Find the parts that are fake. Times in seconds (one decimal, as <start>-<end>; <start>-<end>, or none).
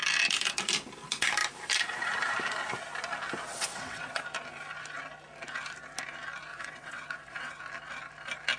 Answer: 3.5-4.2; 6.5-7.6